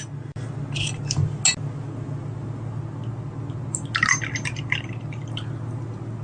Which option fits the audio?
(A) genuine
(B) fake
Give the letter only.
A